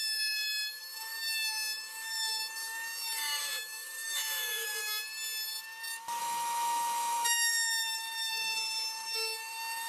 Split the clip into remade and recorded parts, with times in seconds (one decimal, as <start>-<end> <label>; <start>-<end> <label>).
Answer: 0.0-4.7 remade; 4.7-6.2 recorded; 6.2-9.9 remade